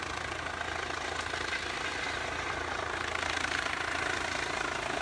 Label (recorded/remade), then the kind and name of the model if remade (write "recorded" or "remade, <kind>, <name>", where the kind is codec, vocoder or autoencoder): recorded